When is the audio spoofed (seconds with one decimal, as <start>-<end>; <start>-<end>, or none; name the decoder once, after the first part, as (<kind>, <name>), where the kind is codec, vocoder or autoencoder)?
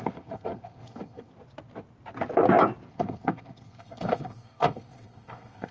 0.0-1.3 (codec, SNAC); 2.9-5.7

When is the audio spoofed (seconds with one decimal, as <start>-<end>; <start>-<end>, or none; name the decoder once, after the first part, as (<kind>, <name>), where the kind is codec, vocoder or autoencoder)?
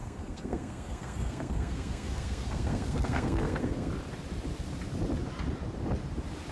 0.0-3.9 (codec, SNAC)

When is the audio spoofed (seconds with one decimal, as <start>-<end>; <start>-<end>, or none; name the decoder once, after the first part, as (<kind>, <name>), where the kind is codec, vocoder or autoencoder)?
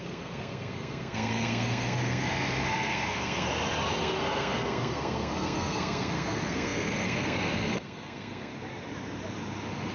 0.0-3.5 (codec, SNAC); 4.0-8.5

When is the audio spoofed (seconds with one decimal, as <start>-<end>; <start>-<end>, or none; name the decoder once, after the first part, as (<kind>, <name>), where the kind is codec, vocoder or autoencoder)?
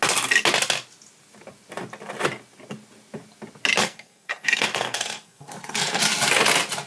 3.8-6.0 (codec, SNAC)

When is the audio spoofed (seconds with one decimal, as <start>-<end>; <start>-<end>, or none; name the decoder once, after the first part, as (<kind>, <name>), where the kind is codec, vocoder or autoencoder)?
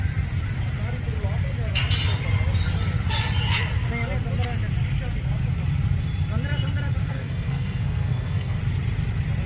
7.0-8.6 (codec, SNAC)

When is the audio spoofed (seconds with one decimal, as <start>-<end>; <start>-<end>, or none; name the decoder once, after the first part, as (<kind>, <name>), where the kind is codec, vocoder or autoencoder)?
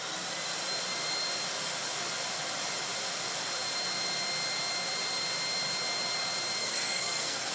6.6-7.5 (codec, SNAC)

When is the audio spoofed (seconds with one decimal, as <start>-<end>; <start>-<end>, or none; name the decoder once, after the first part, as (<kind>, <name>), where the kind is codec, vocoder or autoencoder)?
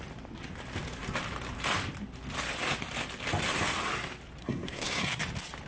4.4-5.2 (codec, SNAC)